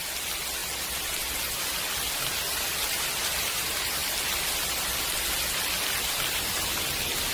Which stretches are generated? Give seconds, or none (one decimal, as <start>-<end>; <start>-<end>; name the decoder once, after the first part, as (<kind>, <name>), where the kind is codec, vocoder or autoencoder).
none